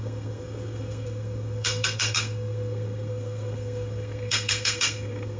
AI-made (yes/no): yes